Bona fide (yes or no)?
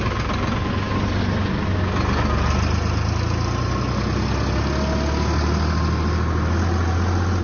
yes